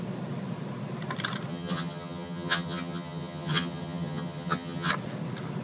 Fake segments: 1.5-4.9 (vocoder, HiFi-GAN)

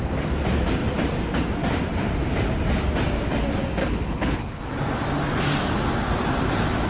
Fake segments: 3.8-4.6 (codec, HILCodec)

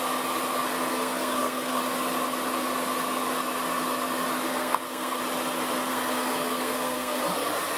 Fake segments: 0.9-1.8 (codec, SNAC); 4.5-5.2; 5.9-7.2

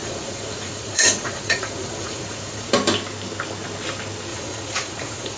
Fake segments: 0.0-2.7 (vocoder, Vocos); 4.3-5.4

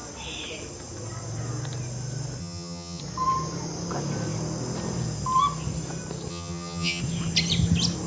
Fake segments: 2.4-3.0 (vocoder, HiFi-GAN); 6.3-7.0

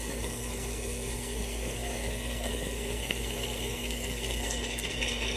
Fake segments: 0.0-5.4 (codec, SNAC)